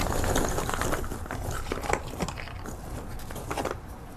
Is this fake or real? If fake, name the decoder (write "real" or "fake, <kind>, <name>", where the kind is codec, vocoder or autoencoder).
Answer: real